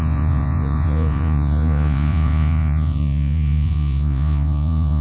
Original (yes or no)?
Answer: no